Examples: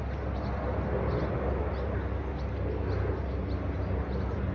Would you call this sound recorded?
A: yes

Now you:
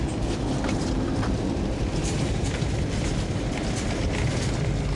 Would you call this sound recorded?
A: yes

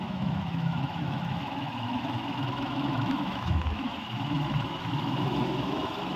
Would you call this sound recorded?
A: no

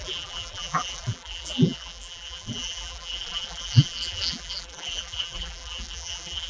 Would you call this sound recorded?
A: no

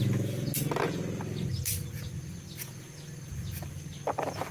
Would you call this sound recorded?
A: yes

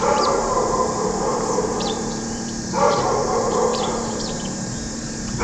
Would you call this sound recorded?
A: no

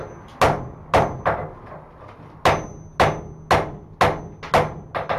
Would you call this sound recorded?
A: yes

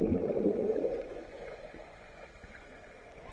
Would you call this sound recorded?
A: no